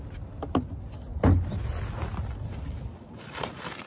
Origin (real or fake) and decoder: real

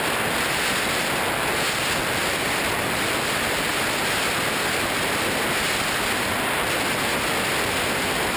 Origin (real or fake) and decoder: real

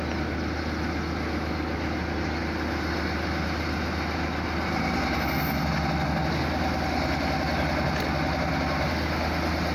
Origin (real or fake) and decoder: real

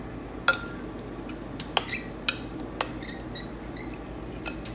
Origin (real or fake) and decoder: real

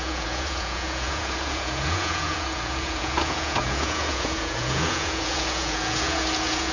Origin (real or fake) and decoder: fake, vocoder, Vocos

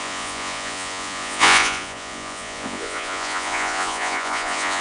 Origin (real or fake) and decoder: fake, vocoder, Vocos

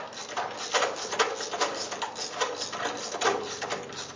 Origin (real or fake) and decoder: real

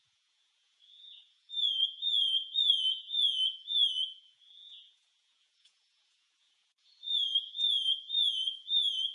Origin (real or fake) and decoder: fake, vocoder, Vocos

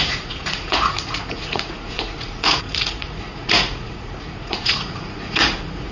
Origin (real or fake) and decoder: fake, vocoder, Vocos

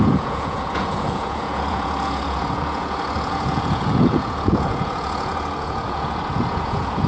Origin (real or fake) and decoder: fake, vocoder, Vocos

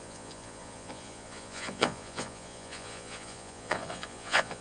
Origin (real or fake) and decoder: fake, vocoder, Vocos